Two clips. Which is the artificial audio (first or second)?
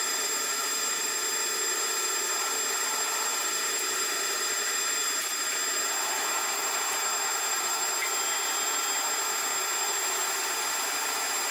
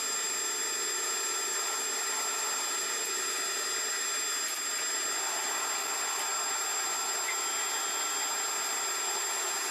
first